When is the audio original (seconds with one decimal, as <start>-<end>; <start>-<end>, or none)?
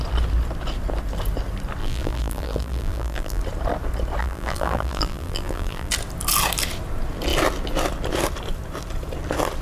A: 0.0-1.8; 3.4-4.2; 5.9-9.6